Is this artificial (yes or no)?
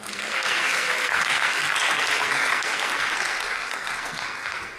yes